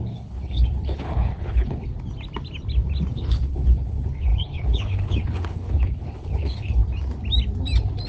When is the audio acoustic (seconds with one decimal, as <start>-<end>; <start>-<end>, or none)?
1.9-3.1; 6.8-8.1